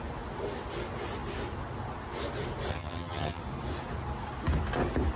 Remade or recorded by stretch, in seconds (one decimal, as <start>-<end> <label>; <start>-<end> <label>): 0.0-2.7 recorded; 2.7-3.4 remade; 3.4-5.2 recorded